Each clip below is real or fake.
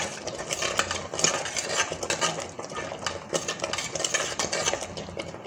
real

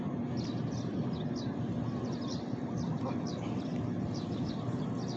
real